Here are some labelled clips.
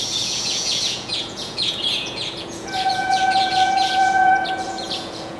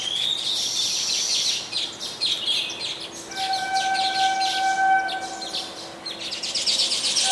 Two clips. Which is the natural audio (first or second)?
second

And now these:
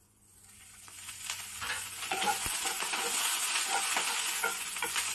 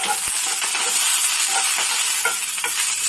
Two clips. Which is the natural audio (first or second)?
second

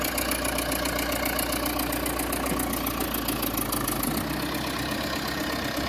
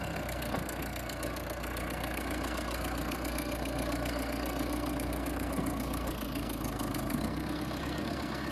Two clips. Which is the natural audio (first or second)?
first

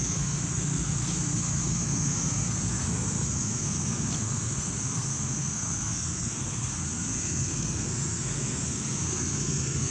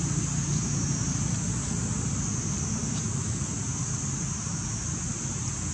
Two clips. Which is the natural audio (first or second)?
second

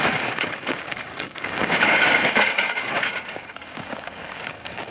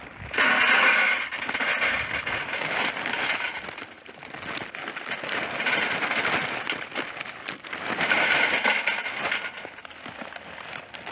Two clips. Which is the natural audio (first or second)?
second